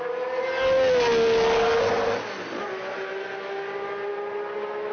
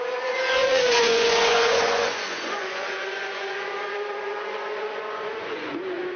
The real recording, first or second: first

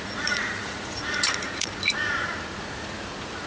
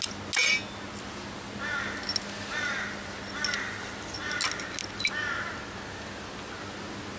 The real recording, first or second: second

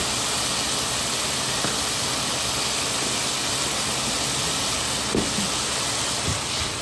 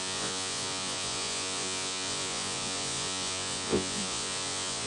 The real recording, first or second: first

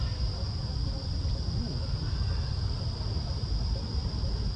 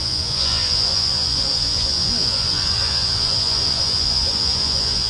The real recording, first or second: first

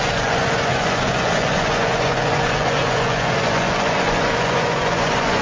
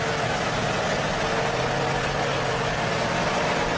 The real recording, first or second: second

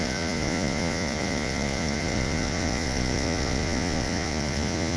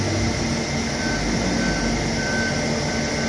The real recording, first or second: second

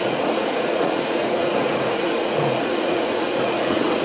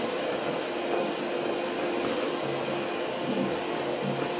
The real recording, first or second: second